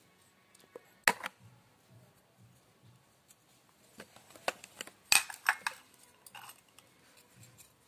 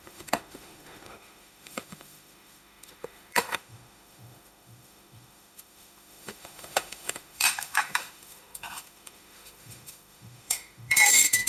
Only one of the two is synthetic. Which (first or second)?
second